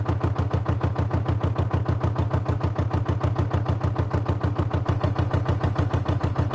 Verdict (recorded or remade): recorded